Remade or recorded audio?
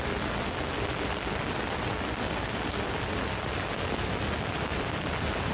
recorded